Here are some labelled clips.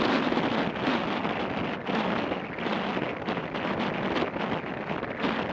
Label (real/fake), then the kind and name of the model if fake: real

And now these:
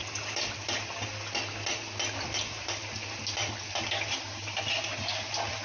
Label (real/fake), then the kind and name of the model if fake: real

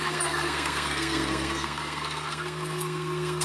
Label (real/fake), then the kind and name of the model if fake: fake, codec, SNAC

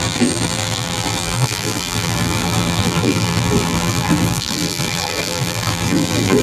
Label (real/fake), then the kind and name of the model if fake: fake, vocoder, BigVGAN v2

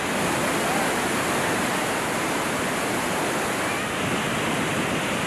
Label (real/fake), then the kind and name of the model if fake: real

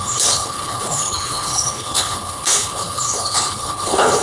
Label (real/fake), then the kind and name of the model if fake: fake, codec, HILCodec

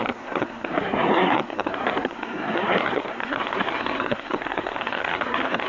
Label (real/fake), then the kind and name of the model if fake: fake, codec, SNAC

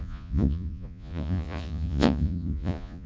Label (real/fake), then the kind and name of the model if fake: fake, vocoder, Vocos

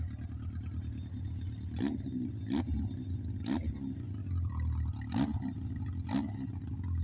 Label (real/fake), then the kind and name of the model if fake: real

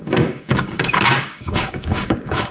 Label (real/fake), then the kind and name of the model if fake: fake, codec, DAC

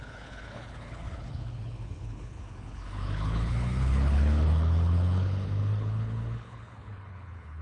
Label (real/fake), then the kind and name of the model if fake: fake, codec, HILCodec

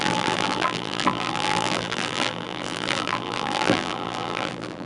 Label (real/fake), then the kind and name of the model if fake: fake, vocoder, BigVGAN v2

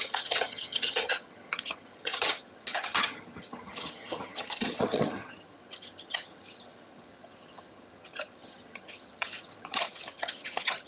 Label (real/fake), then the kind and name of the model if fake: fake, vocoder, HiFi-GAN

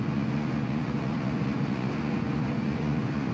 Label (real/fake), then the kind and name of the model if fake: fake, vocoder, Vocos